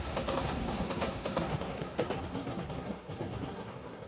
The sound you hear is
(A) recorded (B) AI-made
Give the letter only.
B